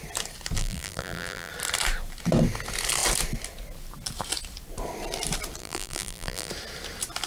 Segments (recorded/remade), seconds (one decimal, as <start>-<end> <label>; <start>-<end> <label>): 0.0-0.6 recorded; 0.6-1.5 remade; 1.5-5.6 recorded; 5.6-6.5 remade; 6.5-7.3 recorded